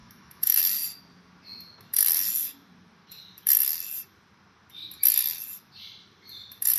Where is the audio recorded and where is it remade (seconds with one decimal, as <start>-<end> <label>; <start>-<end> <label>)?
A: 0.0-0.6 remade; 0.6-6.8 recorded